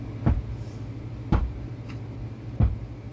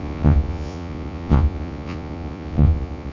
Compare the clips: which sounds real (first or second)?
first